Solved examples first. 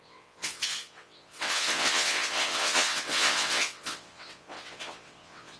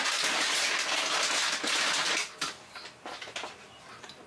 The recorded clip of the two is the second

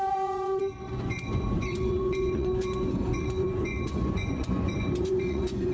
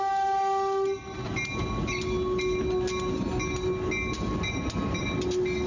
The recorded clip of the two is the second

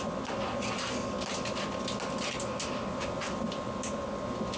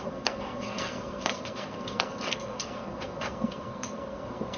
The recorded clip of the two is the first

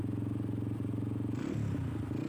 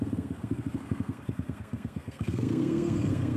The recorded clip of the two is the first